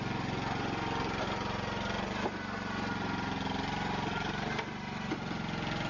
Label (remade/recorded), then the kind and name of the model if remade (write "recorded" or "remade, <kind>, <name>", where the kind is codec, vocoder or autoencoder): recorded